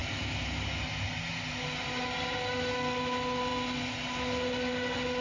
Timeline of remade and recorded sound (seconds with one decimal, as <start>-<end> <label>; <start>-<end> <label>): 0.0-5.2 recorded